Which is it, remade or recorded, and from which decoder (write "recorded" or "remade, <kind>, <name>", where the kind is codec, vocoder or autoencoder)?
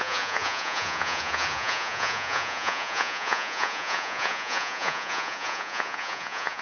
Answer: remade, vocoder, Vocos